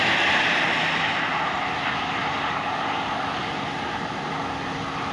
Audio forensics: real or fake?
real